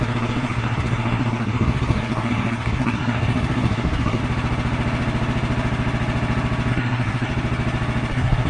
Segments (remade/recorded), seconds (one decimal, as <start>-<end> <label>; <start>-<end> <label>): 0.0-4.2 remade; 4.2-6.7 recorded; 6.7-7.3 remade; 7.3-8.1 recorded; 8.1-8.5 remade